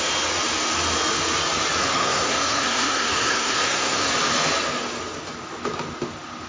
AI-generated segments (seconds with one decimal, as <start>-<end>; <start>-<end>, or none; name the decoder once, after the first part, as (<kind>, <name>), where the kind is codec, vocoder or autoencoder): 1.8-4.1 (codec, SNAC)